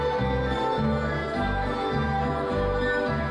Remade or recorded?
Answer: recorded